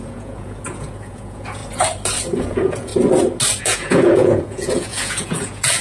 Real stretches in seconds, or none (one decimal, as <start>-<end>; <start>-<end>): 1.6-2.4; 2.9-3.6